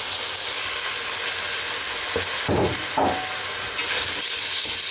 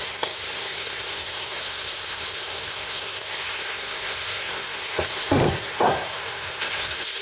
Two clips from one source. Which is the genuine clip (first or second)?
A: first